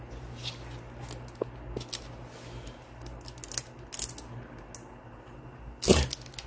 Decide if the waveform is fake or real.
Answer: real